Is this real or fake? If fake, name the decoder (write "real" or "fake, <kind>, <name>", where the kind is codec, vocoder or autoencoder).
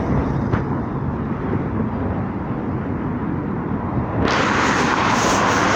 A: real